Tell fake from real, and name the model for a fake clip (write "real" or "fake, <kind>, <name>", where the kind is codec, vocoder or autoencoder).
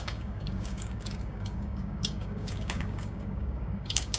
fake, codec, DAC